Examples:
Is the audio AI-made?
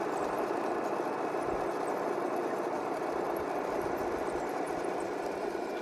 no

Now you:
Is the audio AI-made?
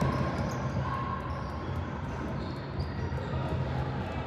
no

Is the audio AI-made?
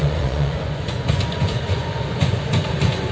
yes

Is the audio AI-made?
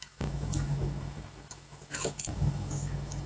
yes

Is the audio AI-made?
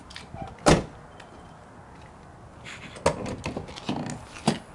no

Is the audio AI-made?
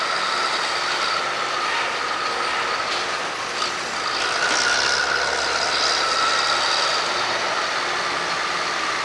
no